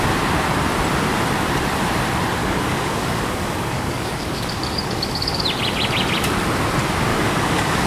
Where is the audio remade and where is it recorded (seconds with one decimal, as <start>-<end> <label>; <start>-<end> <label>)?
0.0-2.4 recorded; 2.4-5.4 remade; 5.4-7.1 recorded; 7.1-7.9 remade